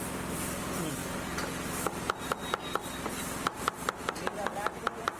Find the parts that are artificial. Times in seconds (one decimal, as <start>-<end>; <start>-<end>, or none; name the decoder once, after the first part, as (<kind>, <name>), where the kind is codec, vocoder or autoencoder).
none